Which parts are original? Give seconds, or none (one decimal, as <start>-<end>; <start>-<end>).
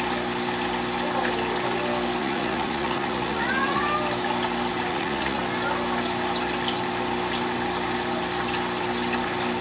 0.0-2.2; 3.8-4.9; 5.4-9.6